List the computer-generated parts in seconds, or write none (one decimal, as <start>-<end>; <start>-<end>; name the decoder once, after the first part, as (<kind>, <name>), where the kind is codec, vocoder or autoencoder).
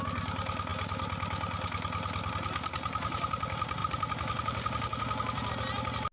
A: none